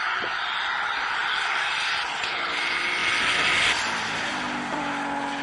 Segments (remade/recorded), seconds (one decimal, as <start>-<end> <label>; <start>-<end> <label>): 0.0-5.4 recorded